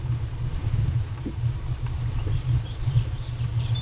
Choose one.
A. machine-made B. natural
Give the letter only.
A